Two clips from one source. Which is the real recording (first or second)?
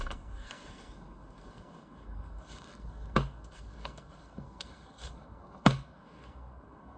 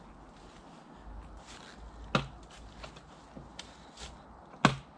second